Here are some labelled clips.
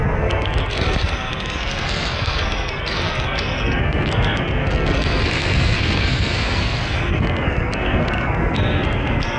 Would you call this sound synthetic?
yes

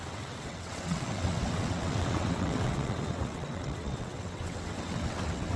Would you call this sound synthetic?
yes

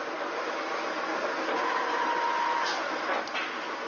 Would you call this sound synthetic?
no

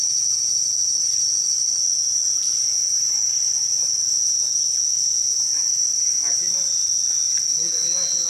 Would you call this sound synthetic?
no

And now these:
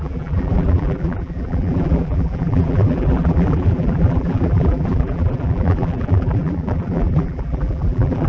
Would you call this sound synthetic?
yes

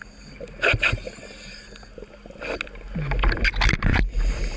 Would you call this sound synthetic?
no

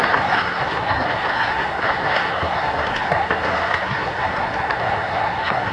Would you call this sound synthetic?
yes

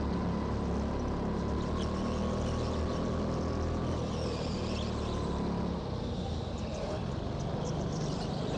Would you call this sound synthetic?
no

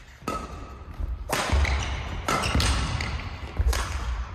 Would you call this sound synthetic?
no